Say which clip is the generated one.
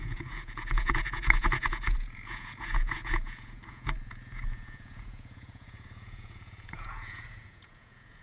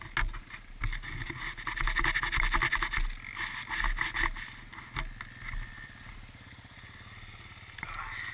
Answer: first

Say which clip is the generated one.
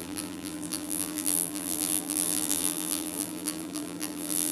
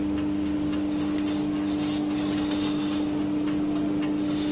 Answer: first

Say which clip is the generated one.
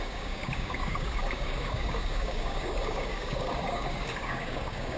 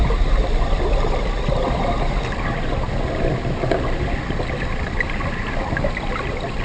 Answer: first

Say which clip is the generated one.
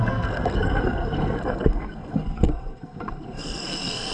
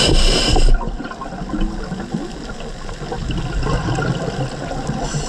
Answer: first